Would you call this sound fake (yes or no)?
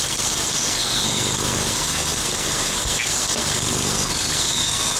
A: yes